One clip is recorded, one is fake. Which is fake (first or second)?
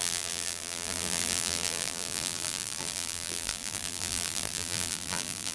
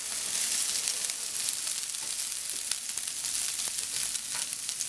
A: first